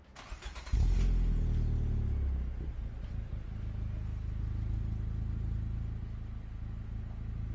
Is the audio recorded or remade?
recorded